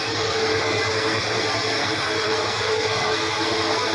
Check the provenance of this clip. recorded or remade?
remade